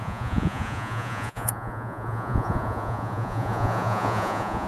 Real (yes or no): no